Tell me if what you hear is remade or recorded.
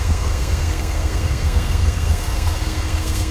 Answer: remade